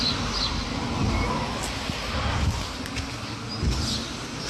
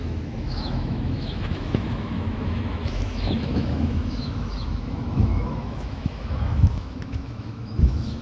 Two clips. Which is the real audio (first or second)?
first